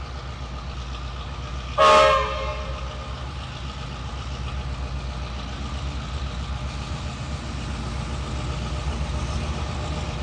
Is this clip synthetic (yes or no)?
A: no